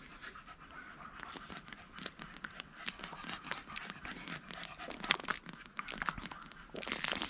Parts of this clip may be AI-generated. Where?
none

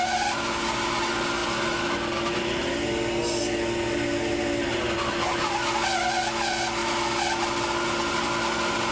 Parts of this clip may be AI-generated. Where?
none